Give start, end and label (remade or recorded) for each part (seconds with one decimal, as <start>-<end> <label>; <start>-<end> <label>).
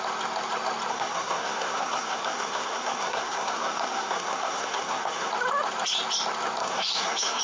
0.0-0.9 recorded; 0.9-5.3 remade; 5.3-6.6 recorded; 6.6-7.4 remade